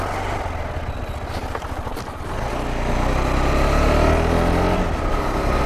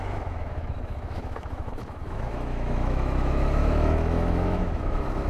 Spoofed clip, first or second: second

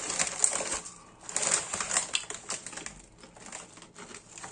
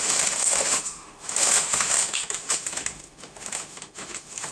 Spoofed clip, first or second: second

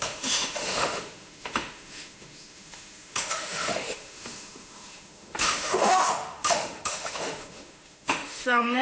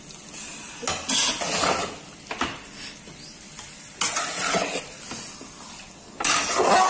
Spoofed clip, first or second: first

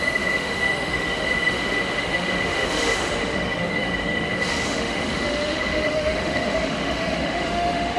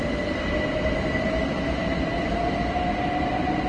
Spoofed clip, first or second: first